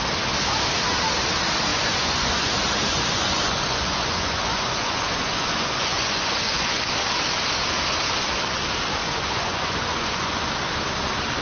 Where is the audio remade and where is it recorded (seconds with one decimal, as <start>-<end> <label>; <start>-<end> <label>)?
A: 0.0-1.7 recorded; 1.7-2.5 remade; 2.5-2.9 recorded; 2.9-6.9 remade; 6.9-9.0 recorded; 9.0-10.5 remade; 10.5-11.4 recorded